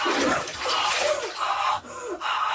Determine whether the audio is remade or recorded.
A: recorded